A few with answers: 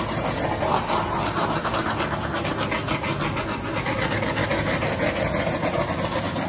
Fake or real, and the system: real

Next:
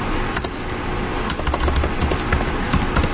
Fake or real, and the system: real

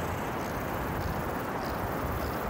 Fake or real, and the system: real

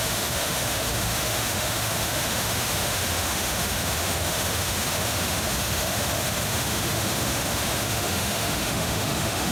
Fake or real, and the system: fake, autoencoder, DAC-VAE